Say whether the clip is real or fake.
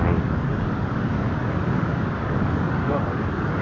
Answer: fake